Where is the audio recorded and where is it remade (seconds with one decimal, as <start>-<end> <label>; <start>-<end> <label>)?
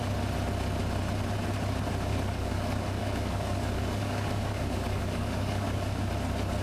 0.0-2.1 recorded; 2.1-6.1 remade; 6.1-6.6 recorded